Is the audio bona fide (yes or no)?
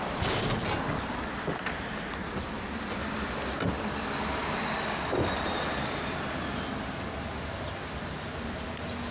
yes